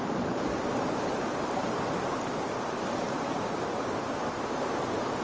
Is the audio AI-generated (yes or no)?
no